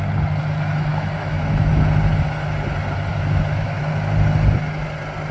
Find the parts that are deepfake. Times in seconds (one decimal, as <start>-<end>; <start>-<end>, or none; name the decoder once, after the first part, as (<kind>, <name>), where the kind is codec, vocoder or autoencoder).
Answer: 0.9-1.7 (autoencoder, DAC-VAE); 3.1-3.8